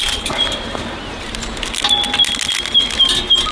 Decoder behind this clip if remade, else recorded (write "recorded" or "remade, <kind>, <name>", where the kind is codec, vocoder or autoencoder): recorded